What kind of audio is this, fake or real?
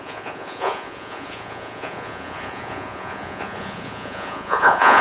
fake